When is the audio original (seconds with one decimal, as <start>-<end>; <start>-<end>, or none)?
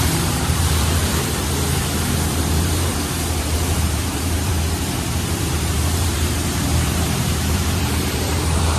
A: 1.1-2.3; 2.9-3.4; 4.5-5.4